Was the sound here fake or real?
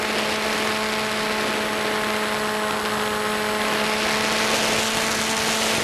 real